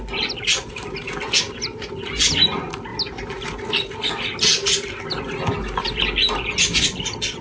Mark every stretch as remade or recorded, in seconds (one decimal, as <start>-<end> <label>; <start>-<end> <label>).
0.0-7.4 recorded